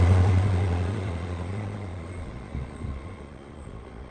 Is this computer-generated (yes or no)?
yes